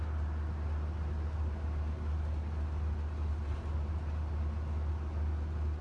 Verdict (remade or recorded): recorded